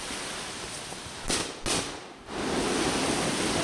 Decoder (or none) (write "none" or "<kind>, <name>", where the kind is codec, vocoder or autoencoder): none